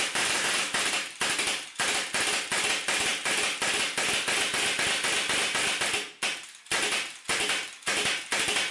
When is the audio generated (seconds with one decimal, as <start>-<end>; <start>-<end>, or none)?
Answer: none